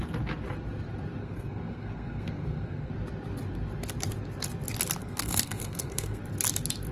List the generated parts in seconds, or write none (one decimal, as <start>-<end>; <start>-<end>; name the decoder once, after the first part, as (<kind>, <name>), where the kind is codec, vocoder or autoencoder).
1.2-2.9 (codec, SNAC); 5.0-6.2